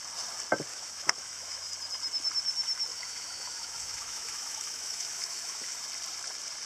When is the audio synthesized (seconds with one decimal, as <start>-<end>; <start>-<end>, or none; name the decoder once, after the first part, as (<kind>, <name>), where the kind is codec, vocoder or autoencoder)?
0.7-1.7 (autoencoder, DAC-VAE); 2.9-5.8